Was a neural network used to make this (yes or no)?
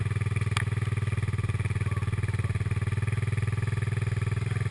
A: no